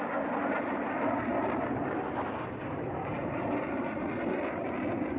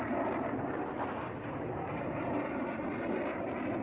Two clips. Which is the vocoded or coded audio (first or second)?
first